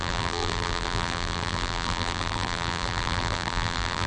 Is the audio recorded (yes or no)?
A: no